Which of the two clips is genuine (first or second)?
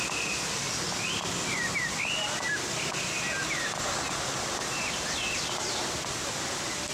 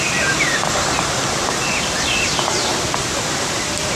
first